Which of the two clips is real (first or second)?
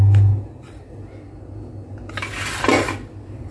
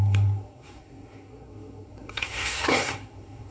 first